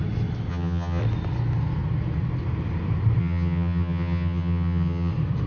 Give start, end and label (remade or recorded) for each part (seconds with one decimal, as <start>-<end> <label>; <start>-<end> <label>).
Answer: 0.0-0.5 recorded; 0.5-1.0 remade; 1.0-3.2 recorded; 3.2-5.1 remade; 5.1-5.5 recorded